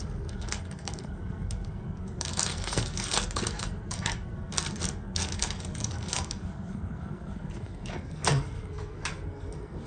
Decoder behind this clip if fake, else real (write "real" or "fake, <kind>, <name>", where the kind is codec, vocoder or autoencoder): fake, codec, SNAC